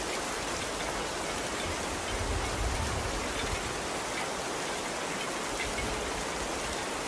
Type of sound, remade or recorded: recorded